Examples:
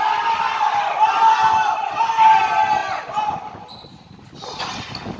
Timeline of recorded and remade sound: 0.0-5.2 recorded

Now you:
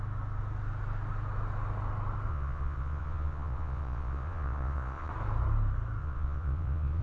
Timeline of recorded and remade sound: 0.0-2.3 recorded; 2.3-5.1 remade; 5.1-6.0 recorded; 6.0-7.0 remade

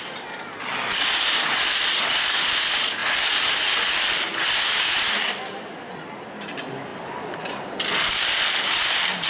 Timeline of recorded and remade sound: 0.0-9.3 recorded

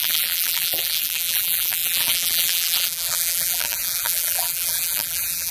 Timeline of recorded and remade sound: 0.0-5.5 remade